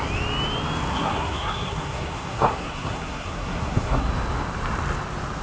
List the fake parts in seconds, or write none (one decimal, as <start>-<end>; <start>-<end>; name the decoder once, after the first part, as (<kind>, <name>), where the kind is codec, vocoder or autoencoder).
0.9-4.1 (codec, SNAC)